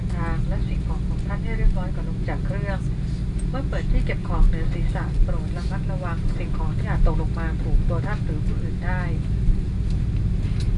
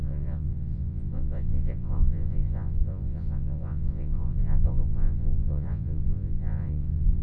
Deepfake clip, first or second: second